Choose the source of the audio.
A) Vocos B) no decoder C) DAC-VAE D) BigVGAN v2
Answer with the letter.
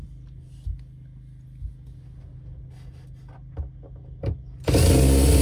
B